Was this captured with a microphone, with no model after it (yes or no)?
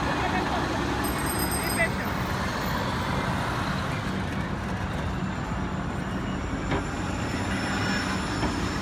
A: yes